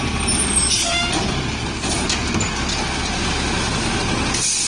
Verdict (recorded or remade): recorded